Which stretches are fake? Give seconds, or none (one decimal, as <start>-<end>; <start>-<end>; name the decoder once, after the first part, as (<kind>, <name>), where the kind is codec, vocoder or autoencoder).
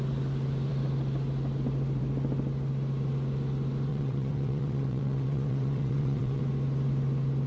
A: 3.9-6.4 (vocoder, WaveNeXt)